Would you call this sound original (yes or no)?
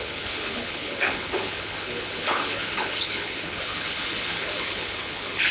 no